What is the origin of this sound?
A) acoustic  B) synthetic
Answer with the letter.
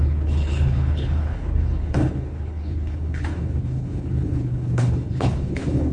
B